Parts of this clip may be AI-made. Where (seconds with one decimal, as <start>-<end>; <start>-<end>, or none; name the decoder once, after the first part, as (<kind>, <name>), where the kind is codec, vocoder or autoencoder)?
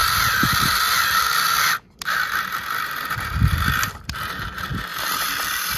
4.9-5.8 (vocoder, BigVGAN v2)